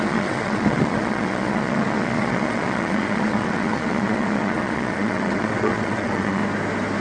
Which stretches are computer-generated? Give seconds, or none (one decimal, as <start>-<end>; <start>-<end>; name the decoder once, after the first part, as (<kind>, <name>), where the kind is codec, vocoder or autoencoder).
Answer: 0.0-6.4 (vocoder, Vocos)